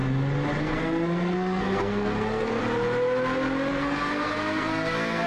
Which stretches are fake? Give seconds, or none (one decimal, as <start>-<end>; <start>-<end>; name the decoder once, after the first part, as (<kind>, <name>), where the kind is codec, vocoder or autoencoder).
0.6-2.6 (codec, SNAC); 3.7-5.3